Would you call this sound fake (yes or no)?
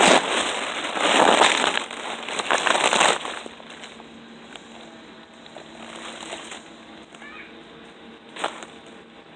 no